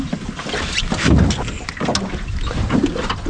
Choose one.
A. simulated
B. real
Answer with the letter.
B